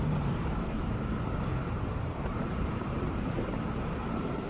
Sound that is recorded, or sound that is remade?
remade